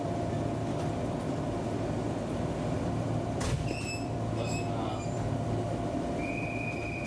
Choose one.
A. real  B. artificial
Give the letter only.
B